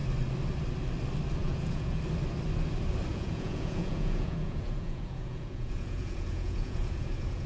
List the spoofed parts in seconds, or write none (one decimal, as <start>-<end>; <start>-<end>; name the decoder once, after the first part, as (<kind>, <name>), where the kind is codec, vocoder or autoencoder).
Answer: 1.4-2.0 (vocoder, Vocos); 3.1-7.5